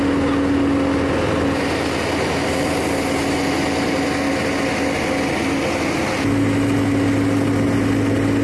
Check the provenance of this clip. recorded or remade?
recorded